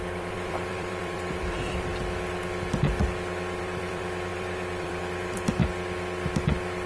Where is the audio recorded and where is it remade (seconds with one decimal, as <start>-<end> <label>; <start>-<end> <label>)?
0.0-1.9 remade; 1.9-3.6 recorded; 3.6-5.6 remade; 5.6-6.9 recorded